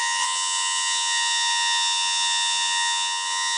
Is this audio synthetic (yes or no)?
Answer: yes